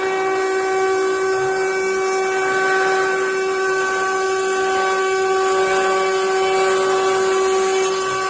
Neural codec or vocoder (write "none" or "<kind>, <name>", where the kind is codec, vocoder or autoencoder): none